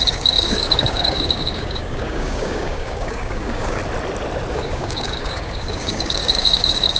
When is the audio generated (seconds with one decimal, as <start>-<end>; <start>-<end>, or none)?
0.0-3.8; 4.5-7.0